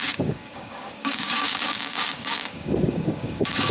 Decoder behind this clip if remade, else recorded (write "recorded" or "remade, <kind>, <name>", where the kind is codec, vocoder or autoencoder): remade, codec, DAC